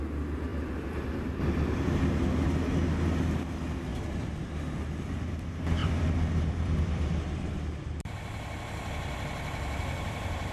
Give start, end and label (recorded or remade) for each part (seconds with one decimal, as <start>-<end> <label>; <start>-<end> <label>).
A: 0.0-0.5 recorded; 0.5-2.7 remade; 2.7-5.8 recorded; 5.8-10.5 remade

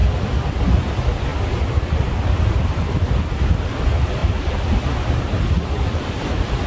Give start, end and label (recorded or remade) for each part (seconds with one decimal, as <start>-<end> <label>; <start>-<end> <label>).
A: 0.0-4.2 recorded; 4.2-6.2 remade; 6.2-6.7 recorded

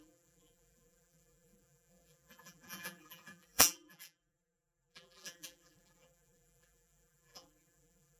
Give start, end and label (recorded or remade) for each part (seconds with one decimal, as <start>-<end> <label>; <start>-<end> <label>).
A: 0.0-8.2 remade

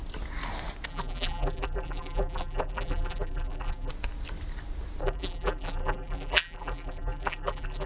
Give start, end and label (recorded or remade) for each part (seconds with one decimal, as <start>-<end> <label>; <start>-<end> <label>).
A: 0.0-0.9 recorded; 0.9-3.9 remade; 3.9-5.0 recorded; 5.0-7.9 remade

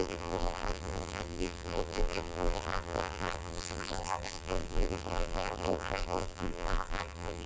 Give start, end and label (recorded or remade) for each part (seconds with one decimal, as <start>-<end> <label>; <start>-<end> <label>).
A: 0.0-7.5 remade

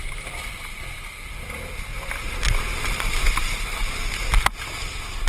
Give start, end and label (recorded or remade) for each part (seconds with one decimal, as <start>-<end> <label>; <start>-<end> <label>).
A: 0.0-1.9 remade; 1.9-2.8 recorded; 2.8-3.8 remade; 3.8-5.3 recorded